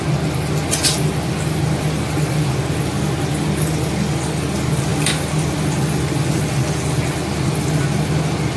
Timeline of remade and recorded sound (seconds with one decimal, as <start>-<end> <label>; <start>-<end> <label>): 0.0-8.6 recorded